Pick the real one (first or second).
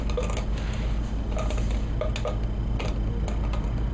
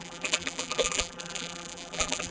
first